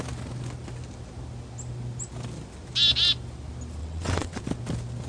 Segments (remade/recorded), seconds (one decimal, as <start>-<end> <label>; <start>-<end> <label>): 0.0-3.8 recorded; 3.8-4.4 remade; 4.4-5.1 recorded

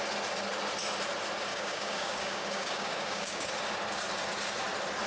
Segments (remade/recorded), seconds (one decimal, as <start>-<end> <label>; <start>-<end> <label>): 0.0-1.5 recorded; 1.5-3.5 remade; 3.5-5.1 recorded

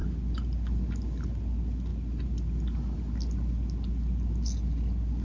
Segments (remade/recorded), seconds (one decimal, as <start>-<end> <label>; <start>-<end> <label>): 0.0-5.2 recorded

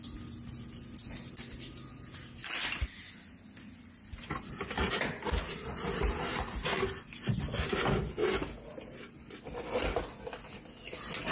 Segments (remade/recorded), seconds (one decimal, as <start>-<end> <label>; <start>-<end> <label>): 0.0-11.3 recorded

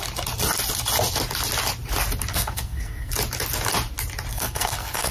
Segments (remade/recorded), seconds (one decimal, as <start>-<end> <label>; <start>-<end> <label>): 0.0-2.3 recorded; 2.3-3.1 remade; 3.1-4.3 recorded; 4.3-5.1 remade

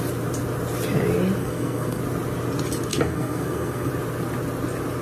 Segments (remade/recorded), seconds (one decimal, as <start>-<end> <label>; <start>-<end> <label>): 0.0-1.4 recorded; 1.4-2.0 remade; 2.0-2.9 recorded; 2.9-3.9 remade; 3.9-5.0 recorded

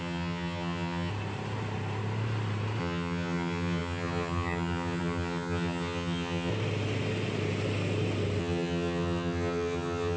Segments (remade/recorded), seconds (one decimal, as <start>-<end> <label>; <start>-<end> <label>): 0.0-1.1 remade; 1.1-2.8 recorded; 2.8-6.5 remade; 6.5-8.4 recorded; 8.4-10.2 remade